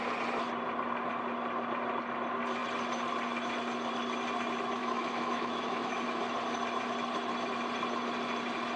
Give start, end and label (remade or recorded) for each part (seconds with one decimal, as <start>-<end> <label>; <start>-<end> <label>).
0.0-4.8 recorded; 4.8-6.2 remade; 6.2-8.8 recorded